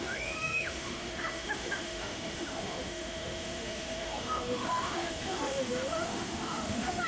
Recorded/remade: remade